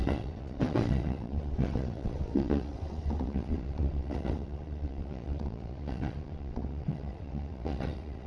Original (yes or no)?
no